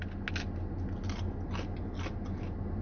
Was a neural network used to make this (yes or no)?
no